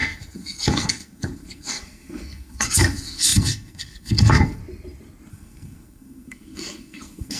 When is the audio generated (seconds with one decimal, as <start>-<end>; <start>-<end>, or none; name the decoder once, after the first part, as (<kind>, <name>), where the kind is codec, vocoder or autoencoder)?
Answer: 0.0-4.6 (codec, SNAC); 5.3-7.4